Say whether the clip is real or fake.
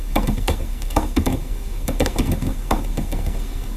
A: fake